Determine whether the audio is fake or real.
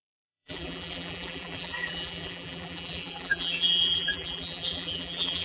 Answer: fake